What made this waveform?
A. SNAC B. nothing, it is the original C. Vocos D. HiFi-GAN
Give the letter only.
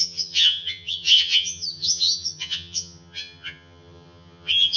D